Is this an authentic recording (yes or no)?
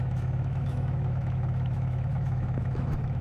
no